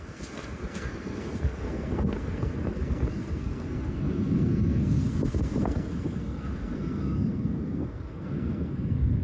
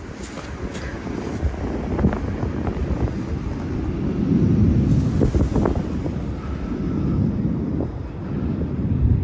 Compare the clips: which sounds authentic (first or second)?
second